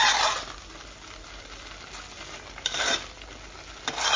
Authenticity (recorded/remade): recorded